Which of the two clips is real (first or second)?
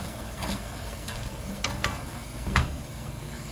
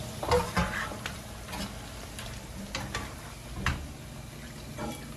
second